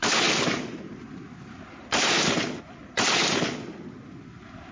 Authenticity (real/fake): real